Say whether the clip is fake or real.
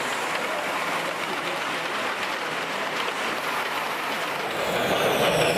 real